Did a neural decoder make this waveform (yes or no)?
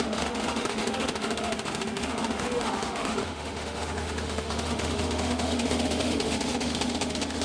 yes